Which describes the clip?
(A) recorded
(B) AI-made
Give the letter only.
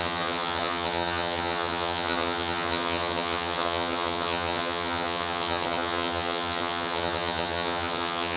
B